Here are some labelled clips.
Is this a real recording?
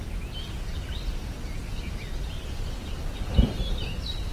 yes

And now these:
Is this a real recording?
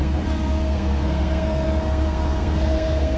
no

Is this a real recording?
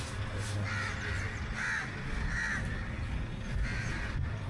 yes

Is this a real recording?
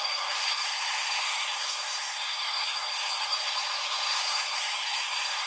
no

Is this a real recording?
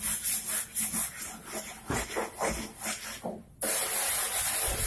yes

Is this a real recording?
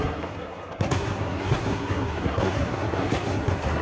no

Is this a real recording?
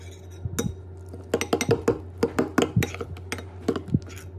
yes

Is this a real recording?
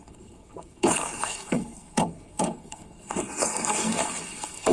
no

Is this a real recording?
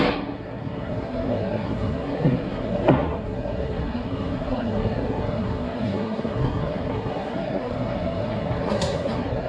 no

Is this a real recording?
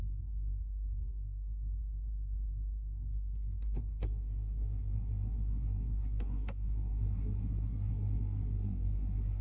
no